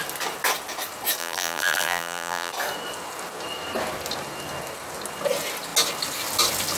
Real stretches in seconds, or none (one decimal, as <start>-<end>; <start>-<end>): 0.0-1.2; 2.5-6.8